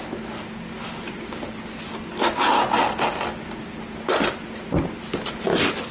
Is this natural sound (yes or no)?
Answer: yes